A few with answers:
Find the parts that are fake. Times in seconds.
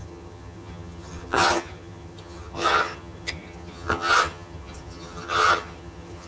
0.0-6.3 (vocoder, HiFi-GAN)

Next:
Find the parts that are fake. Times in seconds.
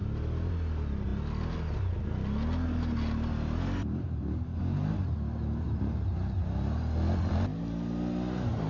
none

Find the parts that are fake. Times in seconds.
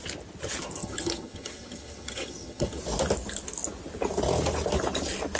0.8-2.8 (vocoder, HiFi-GAN)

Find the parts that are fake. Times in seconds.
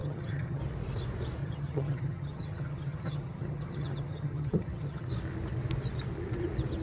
0.0-0.6 (vocoder, HiFi-GAN); 1.4-5.1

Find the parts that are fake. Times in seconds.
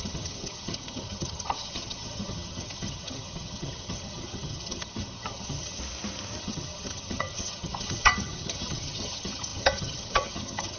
0.0-5.8 (vocoder, HiFi-GAN); 6.4-10.8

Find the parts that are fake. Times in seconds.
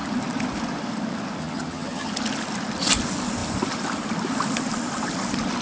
1.4-2.1 (vocoder, HiFi-GAN)